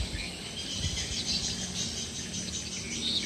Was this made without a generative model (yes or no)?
yes